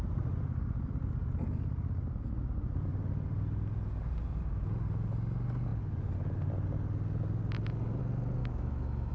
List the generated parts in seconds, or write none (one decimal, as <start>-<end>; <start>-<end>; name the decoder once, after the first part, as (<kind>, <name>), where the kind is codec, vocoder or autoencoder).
8.4-9.1 (autoencoder, DAC-VAE)